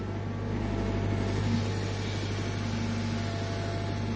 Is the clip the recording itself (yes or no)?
yes